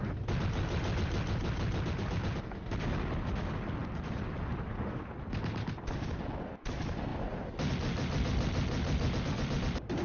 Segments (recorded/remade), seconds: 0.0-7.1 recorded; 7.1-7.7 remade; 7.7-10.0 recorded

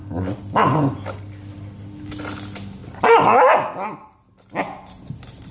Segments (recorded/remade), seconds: 0.0-2.2 remade; 2.2-5.5 recorded

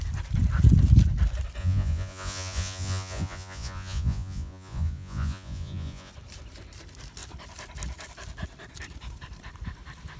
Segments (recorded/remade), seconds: 0.0-1.6 recorded; 1.6-6.1 remade; 6.1-10.2 recorded